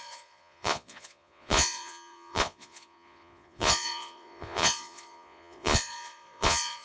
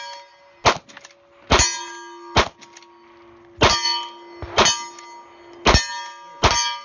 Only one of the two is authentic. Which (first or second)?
second